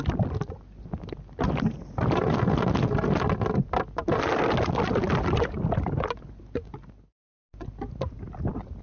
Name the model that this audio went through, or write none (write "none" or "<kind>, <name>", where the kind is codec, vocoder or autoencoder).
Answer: none